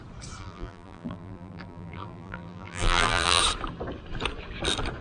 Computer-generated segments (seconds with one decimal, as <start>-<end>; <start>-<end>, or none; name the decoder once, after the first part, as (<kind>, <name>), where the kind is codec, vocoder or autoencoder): 0.4-3.4 (vocoder, BigVGAN v2)